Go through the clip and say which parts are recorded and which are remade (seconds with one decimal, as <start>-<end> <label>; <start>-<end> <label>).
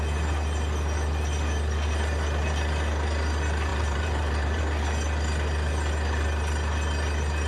0.0-3.7 recorded; 3.7-4.6 remade; 4.6-7.5 recorded